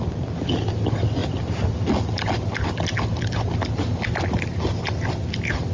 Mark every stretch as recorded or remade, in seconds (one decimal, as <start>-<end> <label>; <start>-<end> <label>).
0.0-5.7 recorded